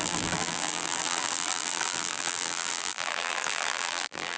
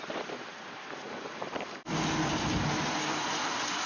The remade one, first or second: first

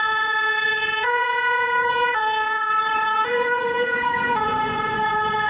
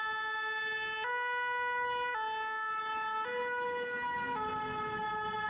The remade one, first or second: first